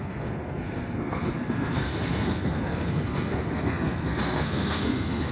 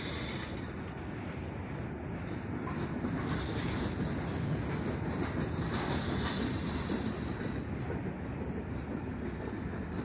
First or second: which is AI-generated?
first